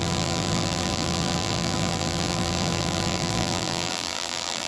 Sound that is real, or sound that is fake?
fake